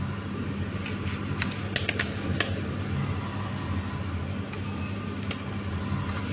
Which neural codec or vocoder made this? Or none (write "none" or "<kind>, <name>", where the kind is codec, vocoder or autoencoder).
none